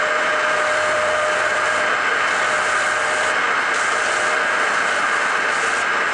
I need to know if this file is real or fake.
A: real